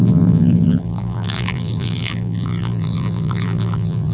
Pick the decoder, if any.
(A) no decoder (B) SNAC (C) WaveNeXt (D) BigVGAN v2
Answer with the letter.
D